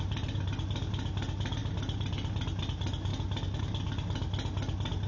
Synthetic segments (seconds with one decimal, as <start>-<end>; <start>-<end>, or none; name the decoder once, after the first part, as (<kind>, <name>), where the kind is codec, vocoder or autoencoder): none